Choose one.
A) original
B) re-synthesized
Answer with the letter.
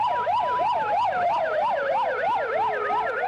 A